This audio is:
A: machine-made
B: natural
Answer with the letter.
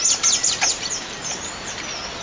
B